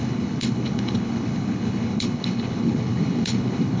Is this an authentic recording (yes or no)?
no